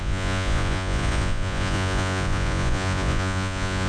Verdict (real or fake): fake